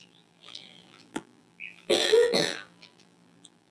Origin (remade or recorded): remade